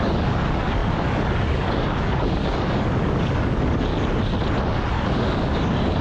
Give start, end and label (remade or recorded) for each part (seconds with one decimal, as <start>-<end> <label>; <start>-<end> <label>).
0.0-3.9 remade; 3.9-4.9 recorded; 4.9-6.0 remade